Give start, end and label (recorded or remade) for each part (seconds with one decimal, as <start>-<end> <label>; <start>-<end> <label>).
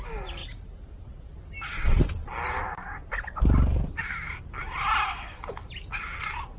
0.0-6.6 recorded